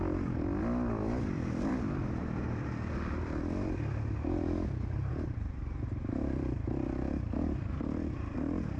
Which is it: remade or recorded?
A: remade